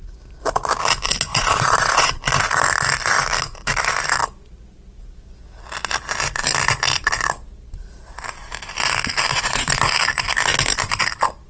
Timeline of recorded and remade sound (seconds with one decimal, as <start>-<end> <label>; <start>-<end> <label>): 0.0-1.3 recorded; 1.3-2.2 remade; 2.2-9.3 recorded; 9.3-9.8 remade; 9.8-11.5 recorded